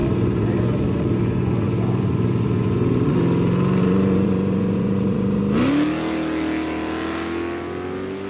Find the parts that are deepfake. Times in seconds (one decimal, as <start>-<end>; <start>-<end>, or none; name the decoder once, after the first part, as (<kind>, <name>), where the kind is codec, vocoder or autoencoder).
0.0-3.2 (vocoder, Vocos); 3.8-5.4